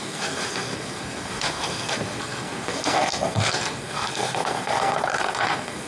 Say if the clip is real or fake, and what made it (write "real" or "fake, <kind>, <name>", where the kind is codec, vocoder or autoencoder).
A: fake, codec, SNAC